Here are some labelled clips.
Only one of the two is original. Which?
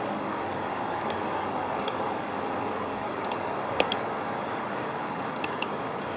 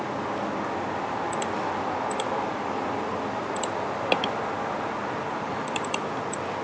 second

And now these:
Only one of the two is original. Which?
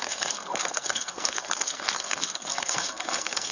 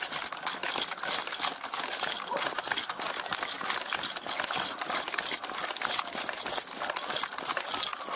second